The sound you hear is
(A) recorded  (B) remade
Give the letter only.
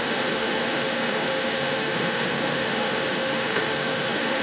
B